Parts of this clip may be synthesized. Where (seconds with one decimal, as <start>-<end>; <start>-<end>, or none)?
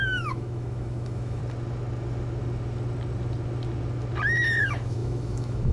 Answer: 0.0-1.4; 4.6-5.7